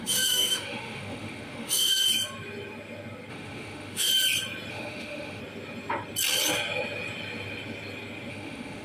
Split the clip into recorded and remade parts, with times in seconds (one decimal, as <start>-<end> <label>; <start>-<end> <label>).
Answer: 0.0-2.1 remade; 2.1-3.3 recorded; 3.3-4.1 remade; 4.1-4.7 recorded; 4.7-5.4 remade; 5.4-8.3 recorded; 8.3-8.8 remade